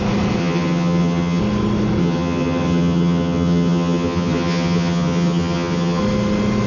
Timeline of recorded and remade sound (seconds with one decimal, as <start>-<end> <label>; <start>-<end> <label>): 0.0-0.4 recorded; 0.4-1.4 remade; 1.4-2.0 recorded; 2.0-6.0 remade; 6.0-6.7 recorded